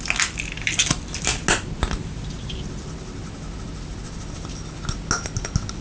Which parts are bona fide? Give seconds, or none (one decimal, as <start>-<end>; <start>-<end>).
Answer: 0.0-5.8